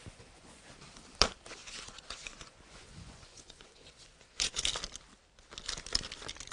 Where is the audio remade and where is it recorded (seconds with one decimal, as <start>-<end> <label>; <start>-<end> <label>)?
0.0-0.7 remade; 0.7-1.6 recorded; 1.6-4.6 remade; 4.6-6.5 recorded